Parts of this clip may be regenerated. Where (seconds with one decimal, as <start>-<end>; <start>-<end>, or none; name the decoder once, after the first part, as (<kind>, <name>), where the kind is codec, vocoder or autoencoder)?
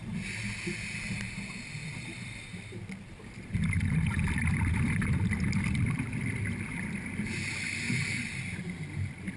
1.8-6.1 (vocoder, BigVGAN v2)